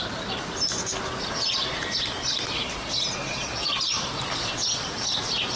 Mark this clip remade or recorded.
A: recorded